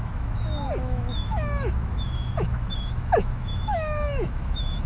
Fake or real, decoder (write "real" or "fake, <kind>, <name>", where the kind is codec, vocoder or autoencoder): fake, autoencoder, DAC-VAE